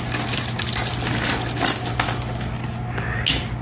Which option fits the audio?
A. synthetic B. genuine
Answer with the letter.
B